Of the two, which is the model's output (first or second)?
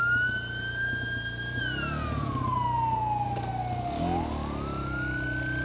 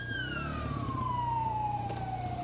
second